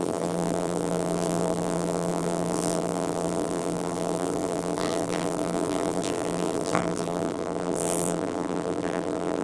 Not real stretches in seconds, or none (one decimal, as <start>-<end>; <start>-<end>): 0.0-9.4

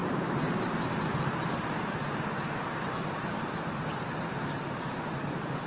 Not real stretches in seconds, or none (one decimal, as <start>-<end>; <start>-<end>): 0.0-3.9; 4.6-5.7